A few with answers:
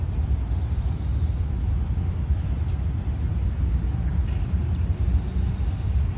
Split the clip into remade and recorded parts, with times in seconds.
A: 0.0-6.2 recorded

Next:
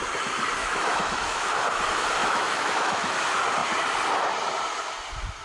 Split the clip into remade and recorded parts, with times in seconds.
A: 0.0-0.6 recorded; 0.6-1.5 remade; 1.5-2.2 recorded; 2.2-3.2 remade; 3.2-5.4 recorded

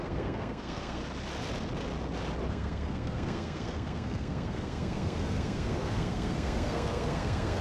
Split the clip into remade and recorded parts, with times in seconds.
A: 0.0-1.0 remade; 1.0-2.5 recorded; 2.5-7.6 remade

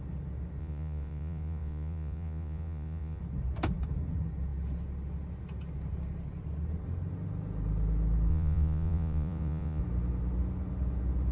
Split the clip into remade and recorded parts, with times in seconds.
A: 0.0-0.6 recorded; 0.6-3.2 remade; 3.2-8.3 recorded; 8.3-9.8 remade; 9.8-11.3 recorded